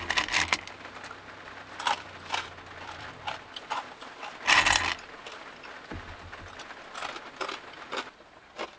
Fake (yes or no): no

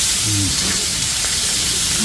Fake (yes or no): yes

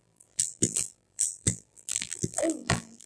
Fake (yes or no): yes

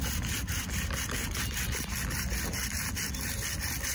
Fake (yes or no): no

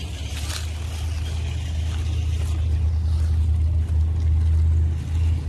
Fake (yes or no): no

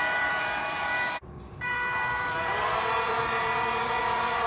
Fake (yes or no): yes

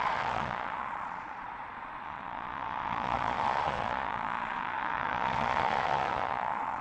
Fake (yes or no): yes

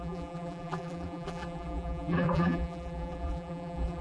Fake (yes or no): yes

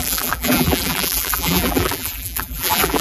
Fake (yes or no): yes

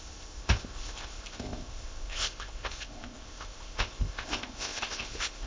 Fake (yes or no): yes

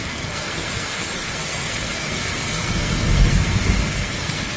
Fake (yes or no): yes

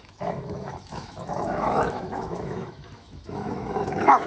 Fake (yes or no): yes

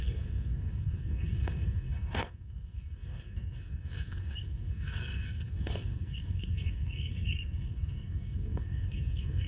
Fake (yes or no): yes